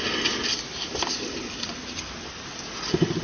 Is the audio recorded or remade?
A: recorded